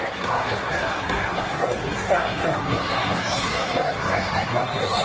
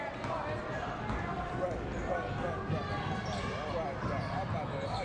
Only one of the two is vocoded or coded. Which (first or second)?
first